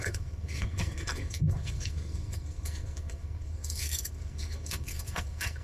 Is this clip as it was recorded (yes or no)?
no